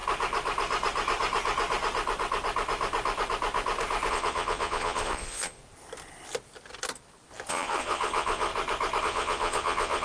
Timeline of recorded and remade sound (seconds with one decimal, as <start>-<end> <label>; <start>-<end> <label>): 0.0-4.1 recorded; 4.1-5.6 remade; 5.6-7.5 recorded; 7.5-8.5 remade; 8.5-9.0 recorded; 9.0-10.0 remade